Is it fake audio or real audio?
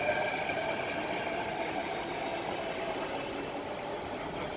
real